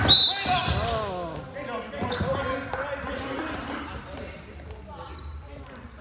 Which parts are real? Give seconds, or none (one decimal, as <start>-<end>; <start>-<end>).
0.0-6.0